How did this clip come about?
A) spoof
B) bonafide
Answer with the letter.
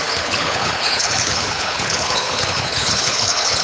A